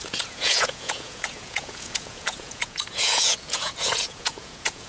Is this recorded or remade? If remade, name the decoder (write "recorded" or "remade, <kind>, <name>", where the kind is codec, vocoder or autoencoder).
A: remade, vocoder, Vocos